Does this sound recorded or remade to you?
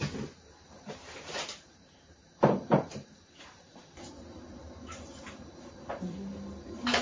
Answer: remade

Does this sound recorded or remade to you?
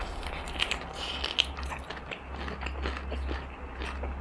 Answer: recorded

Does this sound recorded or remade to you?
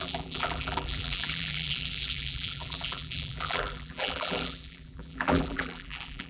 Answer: remade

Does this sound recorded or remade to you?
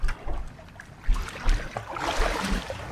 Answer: recorded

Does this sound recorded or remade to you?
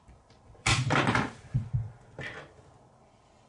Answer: remade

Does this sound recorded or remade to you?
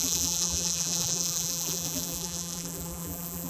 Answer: remade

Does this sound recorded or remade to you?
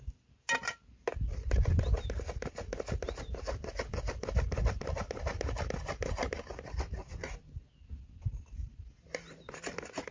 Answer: recorded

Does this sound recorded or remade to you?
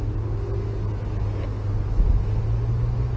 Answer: recorded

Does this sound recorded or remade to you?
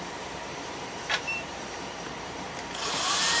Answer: remade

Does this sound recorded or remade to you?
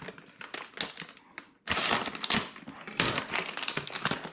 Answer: recorded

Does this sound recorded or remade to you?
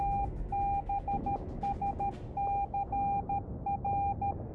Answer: recorded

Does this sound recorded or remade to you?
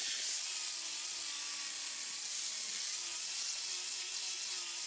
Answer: recorded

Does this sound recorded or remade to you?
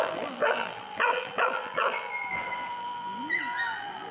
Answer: remade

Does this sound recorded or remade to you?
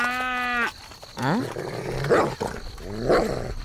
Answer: recorded